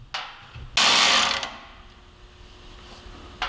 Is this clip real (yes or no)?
yes